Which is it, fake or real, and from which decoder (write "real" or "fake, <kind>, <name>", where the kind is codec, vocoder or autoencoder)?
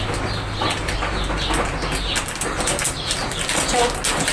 real